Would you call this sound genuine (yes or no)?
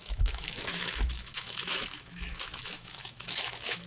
no